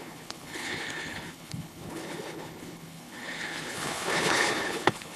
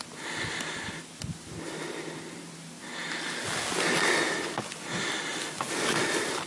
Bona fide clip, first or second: second